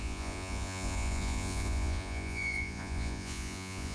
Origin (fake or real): fake